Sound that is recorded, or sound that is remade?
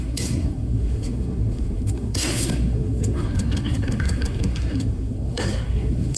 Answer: remade